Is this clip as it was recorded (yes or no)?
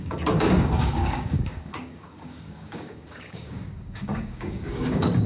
no